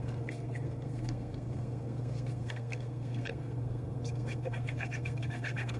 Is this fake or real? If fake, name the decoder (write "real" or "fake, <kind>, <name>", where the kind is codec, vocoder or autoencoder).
fake, codec, SNAC